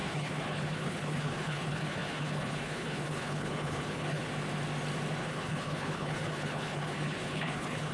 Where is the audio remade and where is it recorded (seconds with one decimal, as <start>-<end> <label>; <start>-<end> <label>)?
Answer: 0.0-4.2 remade; 4.2-5.2 recorded; 5.2-7.9 remade